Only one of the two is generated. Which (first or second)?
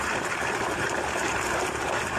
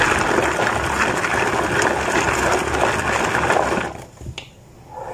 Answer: first